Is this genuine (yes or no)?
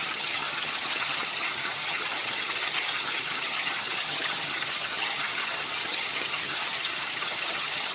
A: no